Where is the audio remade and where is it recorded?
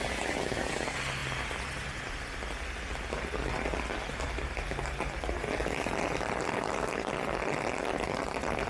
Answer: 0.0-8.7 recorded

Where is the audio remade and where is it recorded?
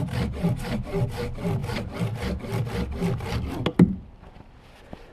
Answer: 0.0-5.1 recorded